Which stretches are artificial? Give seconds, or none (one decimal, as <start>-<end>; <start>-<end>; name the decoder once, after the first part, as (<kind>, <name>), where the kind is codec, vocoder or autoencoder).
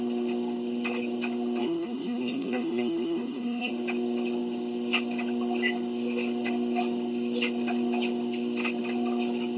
1.6-3.7 (codec, SNAC)